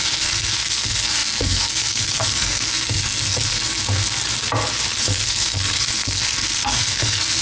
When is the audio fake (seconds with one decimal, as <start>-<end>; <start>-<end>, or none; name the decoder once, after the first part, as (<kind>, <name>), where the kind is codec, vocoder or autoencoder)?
0.0-4.2 (codec, SNAC); 5.0-7.4

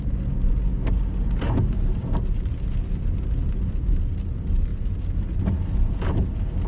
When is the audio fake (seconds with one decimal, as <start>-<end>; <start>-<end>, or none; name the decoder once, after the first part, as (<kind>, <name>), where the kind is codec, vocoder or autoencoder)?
none

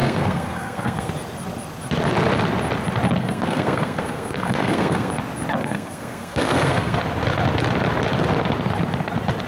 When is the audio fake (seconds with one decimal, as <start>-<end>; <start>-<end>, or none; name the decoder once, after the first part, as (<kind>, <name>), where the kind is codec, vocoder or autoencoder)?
0.0-1.1 (codec, SNAC); 3.2-5.1; 5.6-7.0